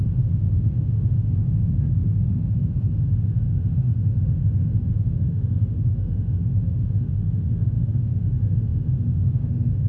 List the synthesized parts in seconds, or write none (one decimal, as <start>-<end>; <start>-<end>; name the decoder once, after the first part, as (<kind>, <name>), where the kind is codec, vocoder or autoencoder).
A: 0.0-9.9 (autoencoder, DAC-VAE)